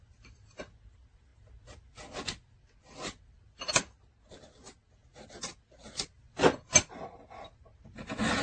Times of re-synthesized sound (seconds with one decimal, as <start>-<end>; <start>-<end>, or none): none